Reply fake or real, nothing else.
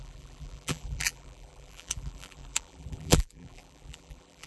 fake